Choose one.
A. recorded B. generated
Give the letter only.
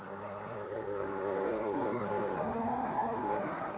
B